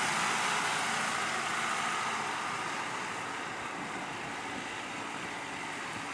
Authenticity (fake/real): real